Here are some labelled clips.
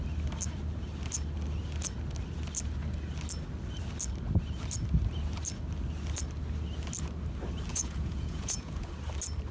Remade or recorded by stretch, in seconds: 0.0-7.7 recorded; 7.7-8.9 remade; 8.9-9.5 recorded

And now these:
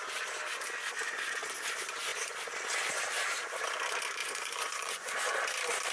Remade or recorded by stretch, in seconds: 0.0-4.2 recorded; 4.2-5.1 remade; 5.1-5.9 recorded

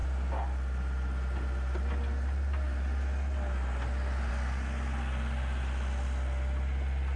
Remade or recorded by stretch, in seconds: 0.0-7.2 recorded